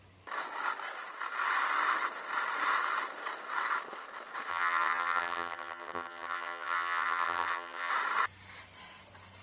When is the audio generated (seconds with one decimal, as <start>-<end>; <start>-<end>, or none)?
4.5-7.9